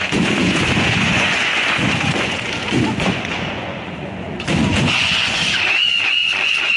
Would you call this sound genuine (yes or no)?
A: no